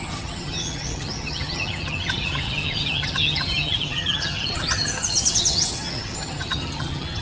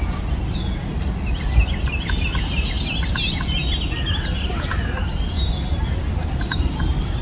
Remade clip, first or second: first